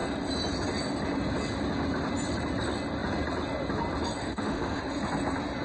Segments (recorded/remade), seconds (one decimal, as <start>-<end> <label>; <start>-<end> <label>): 0.0-4.2 recorded; 4.2-4.8 remade; 4.8-5.6 recorded